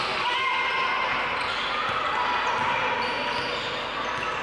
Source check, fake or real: real